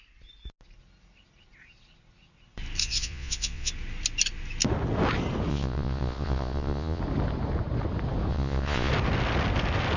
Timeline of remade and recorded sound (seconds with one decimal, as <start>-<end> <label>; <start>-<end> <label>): 0.0-2.8 recorded; 2.8-3.7 remade; 3.7-5.5 recorded; 5.5-7.0 remade; 7.0-8.3 recorded; 8.3-8.9 remade; 8.9-10.0 recorded